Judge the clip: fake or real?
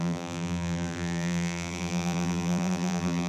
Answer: fake